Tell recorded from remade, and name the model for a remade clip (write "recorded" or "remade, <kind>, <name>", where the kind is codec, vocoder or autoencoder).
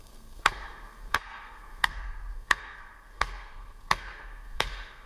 remade, codec, SNAC